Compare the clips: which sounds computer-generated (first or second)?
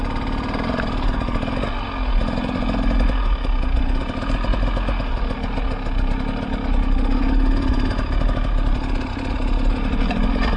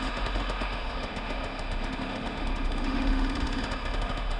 second